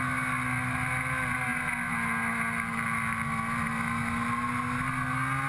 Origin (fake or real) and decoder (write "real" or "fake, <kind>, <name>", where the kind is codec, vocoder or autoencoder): real